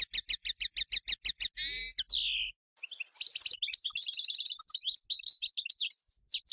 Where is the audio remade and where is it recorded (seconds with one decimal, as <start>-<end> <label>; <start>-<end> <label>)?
0.0-2.2 recorded; 2.2-2.8 remade; 2.8-6.5 recorded